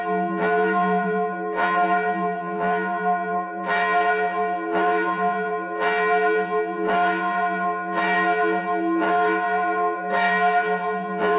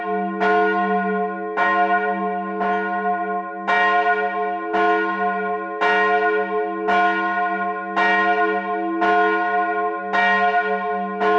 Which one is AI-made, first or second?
first